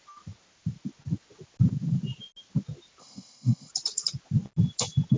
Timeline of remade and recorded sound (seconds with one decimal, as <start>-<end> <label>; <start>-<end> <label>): 0.0-3.0 recorded; 3.0-3.7 remade; 3.7-5.2 recorded